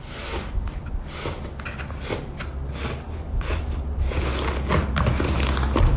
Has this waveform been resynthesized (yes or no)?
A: no